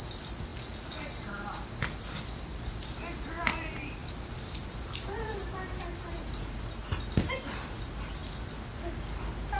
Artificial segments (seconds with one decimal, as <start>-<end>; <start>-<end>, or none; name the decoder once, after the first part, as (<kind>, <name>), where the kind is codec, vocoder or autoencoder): 4.0-6.6 (vocoder, BigVGAN v2)